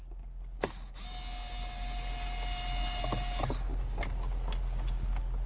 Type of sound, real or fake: real